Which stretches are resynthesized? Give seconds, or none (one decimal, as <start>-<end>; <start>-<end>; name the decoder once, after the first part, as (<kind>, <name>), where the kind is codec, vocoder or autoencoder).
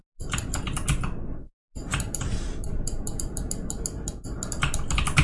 1.8-3.4 (vocoder, BigVGAN v2)